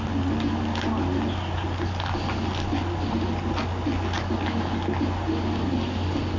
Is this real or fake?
real